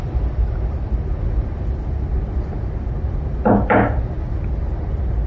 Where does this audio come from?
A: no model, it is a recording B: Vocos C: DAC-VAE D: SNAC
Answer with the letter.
A